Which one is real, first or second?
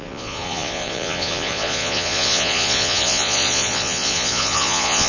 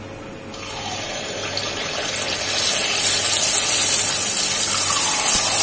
second